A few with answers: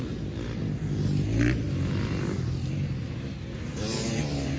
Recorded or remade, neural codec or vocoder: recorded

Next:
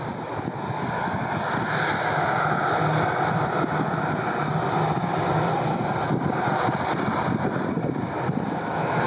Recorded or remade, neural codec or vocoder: recorded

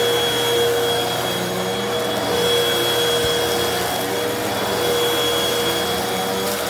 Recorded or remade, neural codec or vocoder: recorded